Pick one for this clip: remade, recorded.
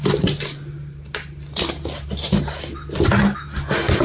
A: recorded